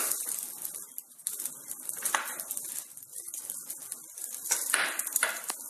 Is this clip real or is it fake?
fake